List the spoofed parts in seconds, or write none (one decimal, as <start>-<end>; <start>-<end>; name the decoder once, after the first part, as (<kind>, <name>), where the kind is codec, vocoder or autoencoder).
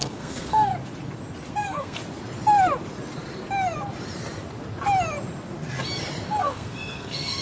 0.0-0.7 (codec, SNAC); 1.5-2.0; 6.4-7.4